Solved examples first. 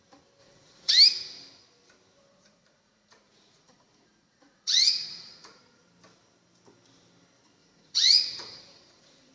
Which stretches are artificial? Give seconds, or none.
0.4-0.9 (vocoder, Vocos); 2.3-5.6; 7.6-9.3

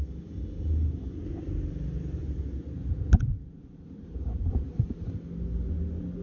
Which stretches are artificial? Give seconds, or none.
2.2-4.7 (vocoder, BigVGAN v2)